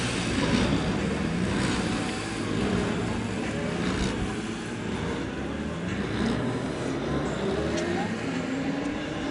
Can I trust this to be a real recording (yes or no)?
yes